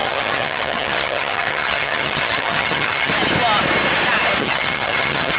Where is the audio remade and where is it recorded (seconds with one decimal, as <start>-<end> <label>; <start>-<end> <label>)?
0.0-3.1 remade; 3.1-4.4 recorded; 4.4-5.4 remade